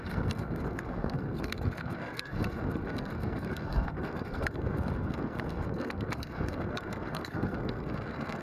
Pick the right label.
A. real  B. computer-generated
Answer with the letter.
B